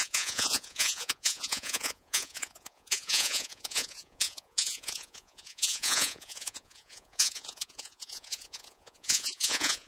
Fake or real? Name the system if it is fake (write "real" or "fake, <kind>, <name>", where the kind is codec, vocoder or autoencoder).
fake, vocoder, Vocos